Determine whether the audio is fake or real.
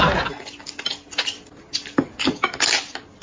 real